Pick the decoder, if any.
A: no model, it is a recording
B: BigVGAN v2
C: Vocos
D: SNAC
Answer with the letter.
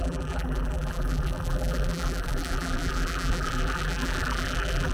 B